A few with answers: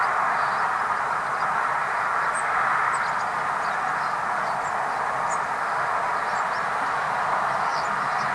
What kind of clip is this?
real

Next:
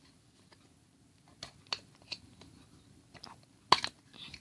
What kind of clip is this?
real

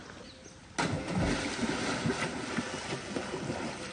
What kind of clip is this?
real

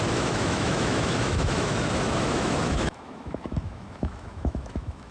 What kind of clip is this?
fake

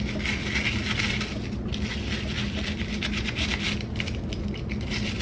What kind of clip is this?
real